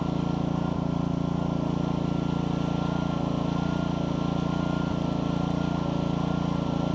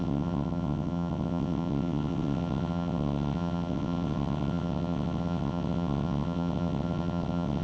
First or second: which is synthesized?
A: second